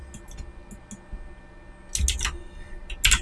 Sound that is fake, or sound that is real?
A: real